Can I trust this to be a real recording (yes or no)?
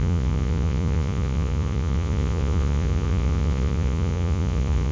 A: no